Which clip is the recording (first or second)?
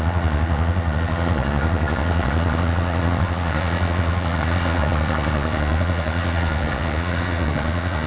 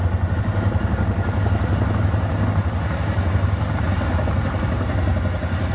second